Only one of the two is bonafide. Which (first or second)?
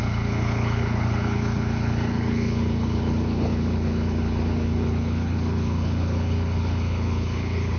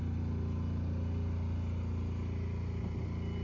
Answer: second